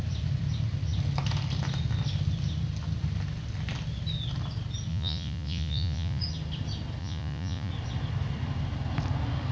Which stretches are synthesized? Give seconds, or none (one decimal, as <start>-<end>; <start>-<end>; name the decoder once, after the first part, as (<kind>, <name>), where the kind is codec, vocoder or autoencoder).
4.9-6.2 (vocoder, Vocos); 7.0-7.7